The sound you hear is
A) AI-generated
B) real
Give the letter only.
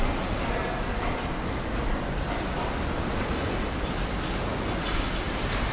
B